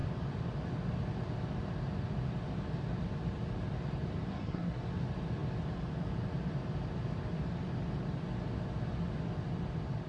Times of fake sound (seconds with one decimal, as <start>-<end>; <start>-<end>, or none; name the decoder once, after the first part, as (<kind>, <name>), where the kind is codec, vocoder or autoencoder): 4.3-4.8 (codec, SNAC)